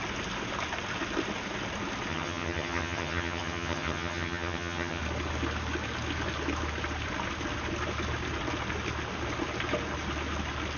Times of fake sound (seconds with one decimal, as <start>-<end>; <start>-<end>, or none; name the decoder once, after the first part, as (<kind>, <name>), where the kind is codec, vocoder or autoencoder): 2.1-5.0 (vocoder, HiFi-GAN)

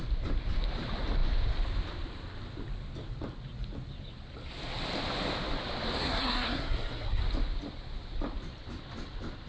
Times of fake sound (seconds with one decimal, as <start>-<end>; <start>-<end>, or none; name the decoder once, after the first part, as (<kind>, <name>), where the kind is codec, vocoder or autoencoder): 6.0-7.2 (codec, SNAC)

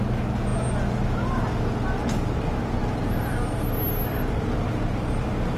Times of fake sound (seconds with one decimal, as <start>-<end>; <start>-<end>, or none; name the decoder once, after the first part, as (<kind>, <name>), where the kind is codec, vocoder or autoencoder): none

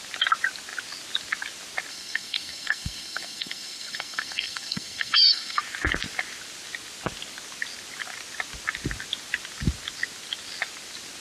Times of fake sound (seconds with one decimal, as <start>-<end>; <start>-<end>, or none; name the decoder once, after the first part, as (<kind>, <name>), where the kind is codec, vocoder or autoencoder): 1.9-5.6 (codec, SNAC)

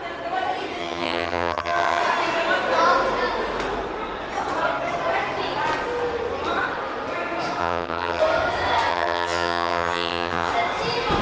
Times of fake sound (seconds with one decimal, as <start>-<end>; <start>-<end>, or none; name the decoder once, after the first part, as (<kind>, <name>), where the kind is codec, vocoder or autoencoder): 0.8-2.0 (vocoder, HiFi-GAN); 7.6-8.2; 8.9-10.5

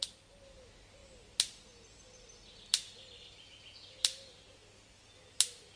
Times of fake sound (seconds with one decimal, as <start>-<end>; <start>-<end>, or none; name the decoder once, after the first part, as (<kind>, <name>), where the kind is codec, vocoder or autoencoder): none